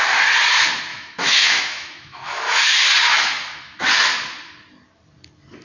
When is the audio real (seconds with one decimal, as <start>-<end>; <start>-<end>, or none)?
0.0-0.9; 2.7-3.1; 3.8-5.6